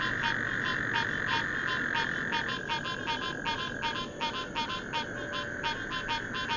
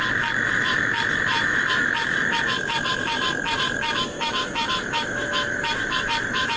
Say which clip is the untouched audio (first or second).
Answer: first